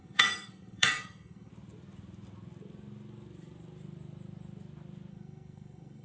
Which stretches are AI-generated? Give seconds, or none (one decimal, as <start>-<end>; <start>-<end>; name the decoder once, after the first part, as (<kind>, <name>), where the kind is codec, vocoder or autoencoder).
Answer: 0.0-1.5 (codec, SNAC); 5.1-6.0

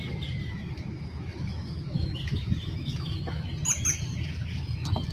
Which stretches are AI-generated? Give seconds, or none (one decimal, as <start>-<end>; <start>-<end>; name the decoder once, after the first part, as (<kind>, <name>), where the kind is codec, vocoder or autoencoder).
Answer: 0.4-3.5 (autoencoder, DAC-VAE)

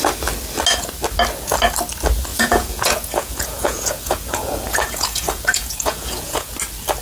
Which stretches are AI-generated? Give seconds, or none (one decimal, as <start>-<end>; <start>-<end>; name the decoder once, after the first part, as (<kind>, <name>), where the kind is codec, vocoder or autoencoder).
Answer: 2.3-6.5 (vocoder, Vocos)

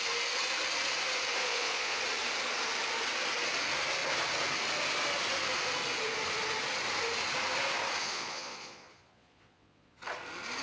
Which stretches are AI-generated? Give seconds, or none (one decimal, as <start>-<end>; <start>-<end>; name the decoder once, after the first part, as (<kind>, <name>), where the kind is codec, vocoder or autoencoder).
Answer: 1.4-2.0 (vocoder, Vocos); 8.0-10.0

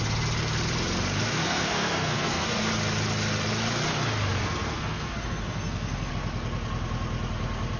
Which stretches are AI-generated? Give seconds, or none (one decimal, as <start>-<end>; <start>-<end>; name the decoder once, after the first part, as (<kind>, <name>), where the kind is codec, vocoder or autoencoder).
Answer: 1.4-2.7 (codec, SNAC); 4.4-6.1

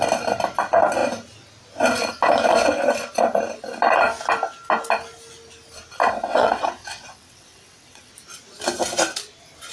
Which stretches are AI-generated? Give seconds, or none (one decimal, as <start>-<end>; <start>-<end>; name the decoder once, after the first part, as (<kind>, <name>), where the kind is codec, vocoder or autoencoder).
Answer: 6.0-8.1 (vocoder, WaveNeXt)